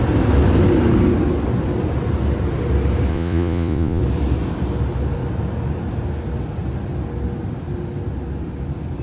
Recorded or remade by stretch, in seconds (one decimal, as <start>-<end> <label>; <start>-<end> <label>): 0.0-3.1 recorded; 3.1-4.0 remade; 4.0-9.0 recorded